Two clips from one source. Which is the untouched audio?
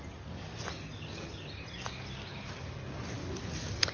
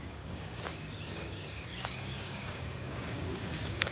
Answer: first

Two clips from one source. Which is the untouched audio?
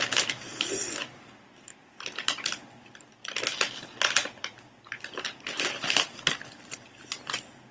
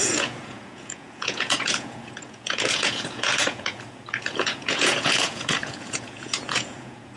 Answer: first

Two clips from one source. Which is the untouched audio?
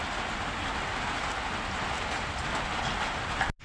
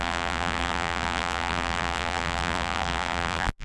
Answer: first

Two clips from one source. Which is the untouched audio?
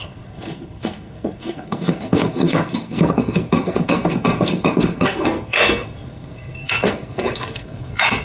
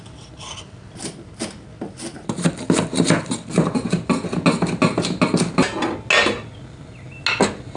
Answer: second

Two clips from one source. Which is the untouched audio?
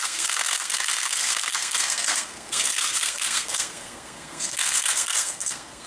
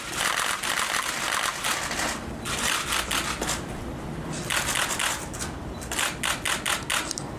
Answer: second